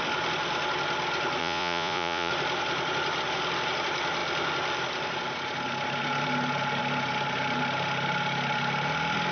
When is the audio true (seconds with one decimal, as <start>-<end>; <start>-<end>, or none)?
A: 0.0-1.4; 2.3-9.3